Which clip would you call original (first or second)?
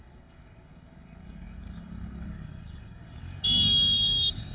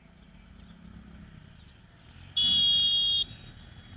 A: second